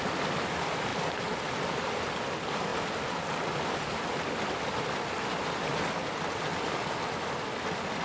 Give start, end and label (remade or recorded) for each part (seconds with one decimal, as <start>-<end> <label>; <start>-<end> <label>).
0.0-8.0 recorded